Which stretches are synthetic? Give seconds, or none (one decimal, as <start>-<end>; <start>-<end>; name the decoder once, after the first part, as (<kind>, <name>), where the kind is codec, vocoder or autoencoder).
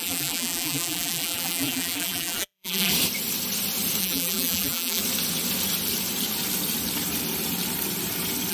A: 0.0-2.9 (vocoder, BigVGAN v2); 4.0-5.0